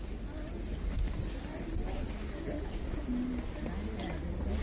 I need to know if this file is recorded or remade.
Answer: recorded